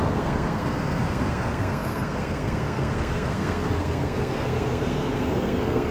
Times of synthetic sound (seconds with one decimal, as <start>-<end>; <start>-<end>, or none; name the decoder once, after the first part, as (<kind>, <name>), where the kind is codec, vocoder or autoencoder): 0.0-5.9 (codec, SNAC)

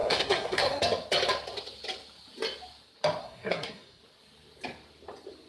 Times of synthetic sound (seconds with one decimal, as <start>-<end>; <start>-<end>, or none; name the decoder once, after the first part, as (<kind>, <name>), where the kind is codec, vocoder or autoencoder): 0.0-0.8 (codec, SNAC); 3.2-4.0

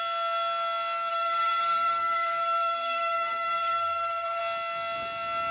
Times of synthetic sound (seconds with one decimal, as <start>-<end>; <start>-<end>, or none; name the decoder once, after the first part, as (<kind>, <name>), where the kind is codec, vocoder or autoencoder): 1.1-4.4 (codec, SNAC)

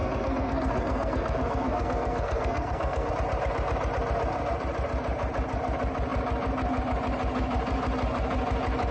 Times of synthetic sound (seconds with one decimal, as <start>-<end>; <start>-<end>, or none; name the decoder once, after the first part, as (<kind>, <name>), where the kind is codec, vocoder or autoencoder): 0.0-3.1 (codec, SNAC)

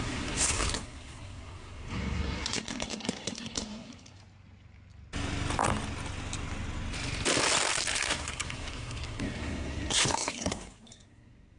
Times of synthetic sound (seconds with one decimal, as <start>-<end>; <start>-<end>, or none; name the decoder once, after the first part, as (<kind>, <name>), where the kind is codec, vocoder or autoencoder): 0.0-4.2 (codec, SNAC); 7.9-11.6

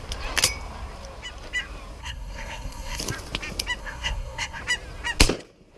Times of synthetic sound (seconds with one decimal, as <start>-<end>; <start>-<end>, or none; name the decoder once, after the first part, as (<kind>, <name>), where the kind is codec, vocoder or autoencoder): 2.0-3.0 (codec, SNAC); 3.8-4.6

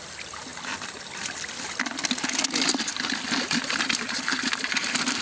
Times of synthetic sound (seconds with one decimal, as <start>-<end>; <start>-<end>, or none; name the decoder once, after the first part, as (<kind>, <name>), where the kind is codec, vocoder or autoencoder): none

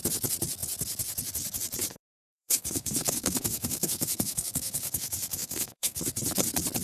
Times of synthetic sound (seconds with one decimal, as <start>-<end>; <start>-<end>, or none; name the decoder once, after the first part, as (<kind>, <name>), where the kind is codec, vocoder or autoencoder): 1.9-6.0 (codec, SNAC)